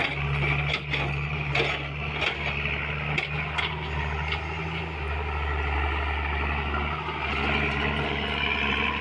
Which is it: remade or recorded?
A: recorded